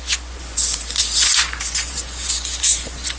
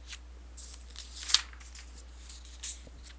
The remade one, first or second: first